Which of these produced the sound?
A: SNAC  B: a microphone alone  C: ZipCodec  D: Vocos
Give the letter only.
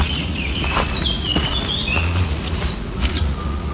D